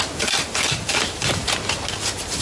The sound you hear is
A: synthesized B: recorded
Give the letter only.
B